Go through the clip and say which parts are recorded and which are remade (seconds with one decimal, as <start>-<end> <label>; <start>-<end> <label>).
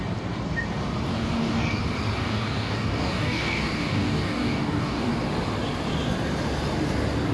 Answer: 0.0-1.1 recorded; 1.1-1.8 remade; 1.8-2.2 recorded; 2.2-5.1 remade; 5.1-7.3 recorded